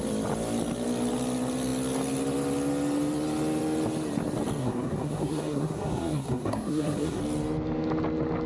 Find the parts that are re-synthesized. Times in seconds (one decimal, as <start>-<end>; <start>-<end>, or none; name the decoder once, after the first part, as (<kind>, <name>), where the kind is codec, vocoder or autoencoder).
4.6-7.2 (codec, SNAC)